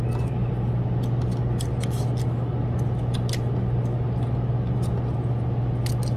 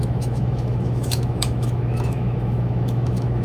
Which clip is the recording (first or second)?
first